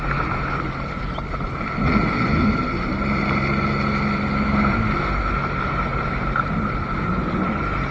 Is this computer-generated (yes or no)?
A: no